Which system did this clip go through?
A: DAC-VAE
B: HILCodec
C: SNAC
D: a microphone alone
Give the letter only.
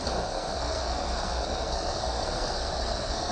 C